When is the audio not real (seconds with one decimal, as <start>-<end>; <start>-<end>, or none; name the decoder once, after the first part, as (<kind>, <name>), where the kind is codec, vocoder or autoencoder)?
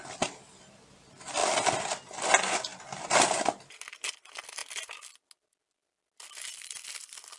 none